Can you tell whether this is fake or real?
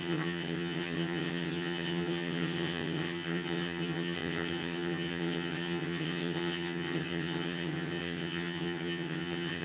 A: fake